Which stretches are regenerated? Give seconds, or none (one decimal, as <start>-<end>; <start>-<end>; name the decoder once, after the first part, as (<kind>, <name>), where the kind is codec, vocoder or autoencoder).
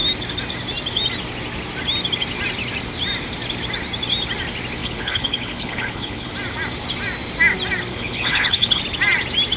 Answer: 4.8-6.3 (codec, HILCodec); 7.9-8.8